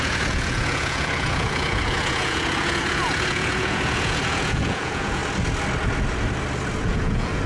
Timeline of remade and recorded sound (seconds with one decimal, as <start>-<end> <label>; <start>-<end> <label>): 0.0-5.2 remade; 5.2-6.8 recorded; 6.8-7.5 remade